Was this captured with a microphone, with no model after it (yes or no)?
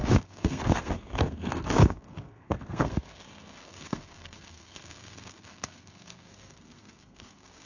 no